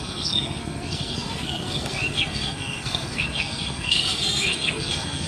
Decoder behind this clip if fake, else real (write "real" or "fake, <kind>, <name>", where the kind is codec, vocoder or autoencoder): fake, codec, SNAC